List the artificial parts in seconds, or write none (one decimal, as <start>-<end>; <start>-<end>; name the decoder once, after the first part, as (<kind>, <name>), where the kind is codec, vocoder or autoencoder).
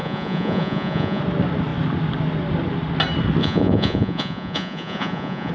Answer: 0.0-1.2 (vocoder, Vocos); 3.4-5.5